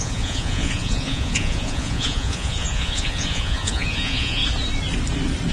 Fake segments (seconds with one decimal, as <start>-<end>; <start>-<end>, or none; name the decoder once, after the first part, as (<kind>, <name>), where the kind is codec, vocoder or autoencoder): 0.0-4.4 (vocoder, Vocos)